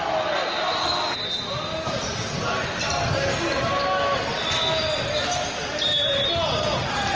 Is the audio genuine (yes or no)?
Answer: yes